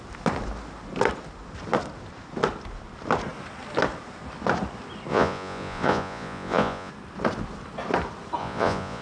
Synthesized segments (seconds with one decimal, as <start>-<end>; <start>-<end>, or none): 5.1-6.9; 8.4-9.0